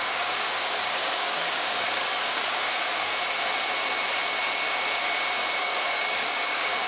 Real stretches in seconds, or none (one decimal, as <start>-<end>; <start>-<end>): 3.1-5.6